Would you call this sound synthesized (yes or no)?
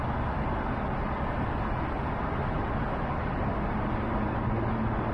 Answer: no